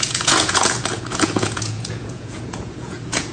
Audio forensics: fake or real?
fake